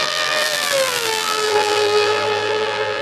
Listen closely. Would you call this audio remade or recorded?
remade